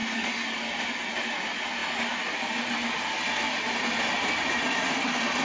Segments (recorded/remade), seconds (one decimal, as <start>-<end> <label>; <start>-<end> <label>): 0.0-5.4 recorded